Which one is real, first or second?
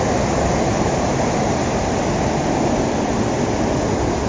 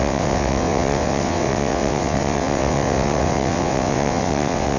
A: first